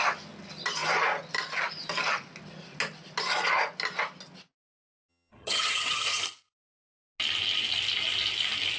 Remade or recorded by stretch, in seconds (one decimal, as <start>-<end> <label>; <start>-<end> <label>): 0.0-5.1 recorded; 5.1-6.2 remade; 6.2-8.8 recorded